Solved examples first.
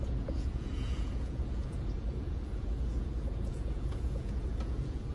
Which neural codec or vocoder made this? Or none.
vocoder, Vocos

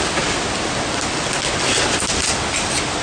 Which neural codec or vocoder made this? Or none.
none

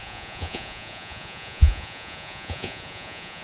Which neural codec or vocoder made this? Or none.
vocoder, Vocos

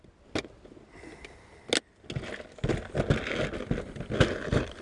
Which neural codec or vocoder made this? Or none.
none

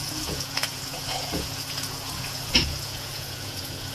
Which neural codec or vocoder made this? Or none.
vocoder, Vocos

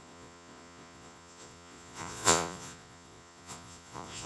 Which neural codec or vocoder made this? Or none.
vocoder, Vocos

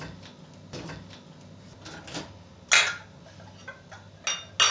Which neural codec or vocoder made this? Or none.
none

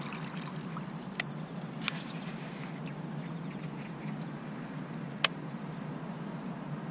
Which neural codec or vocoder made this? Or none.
none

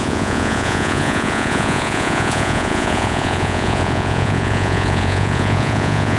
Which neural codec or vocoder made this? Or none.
vocoder, Vocos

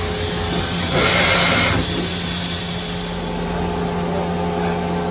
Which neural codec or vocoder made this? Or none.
none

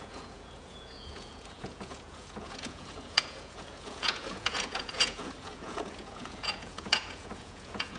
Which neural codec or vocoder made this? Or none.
vocoder, Vocos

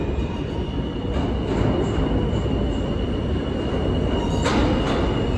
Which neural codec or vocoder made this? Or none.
none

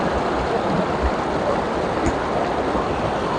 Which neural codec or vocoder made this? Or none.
none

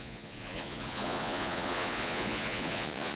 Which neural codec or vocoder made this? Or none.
vocoder, Vocos